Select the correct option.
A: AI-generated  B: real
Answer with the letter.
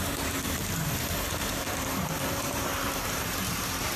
A